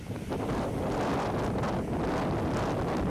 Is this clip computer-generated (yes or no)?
no